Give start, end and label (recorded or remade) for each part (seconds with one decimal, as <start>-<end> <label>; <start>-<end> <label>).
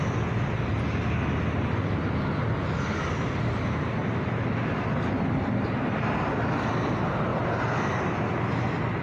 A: 0.0-9.0 recorded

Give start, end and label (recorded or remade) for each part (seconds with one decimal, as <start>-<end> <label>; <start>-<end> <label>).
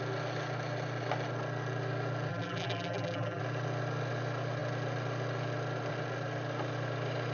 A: 0.0-2.3 recorded; 2.3-3.4 remade; 3.4-7.3 recorded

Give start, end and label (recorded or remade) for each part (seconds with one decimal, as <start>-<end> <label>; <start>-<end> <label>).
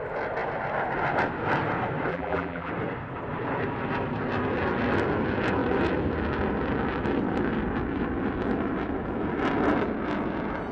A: 0.0-2.1 recorded; 2.1-2.7 remade; 2.7-10.7 recorded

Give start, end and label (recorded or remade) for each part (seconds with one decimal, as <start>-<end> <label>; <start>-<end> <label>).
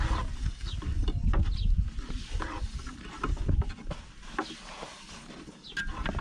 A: 0.0-6.2 recorded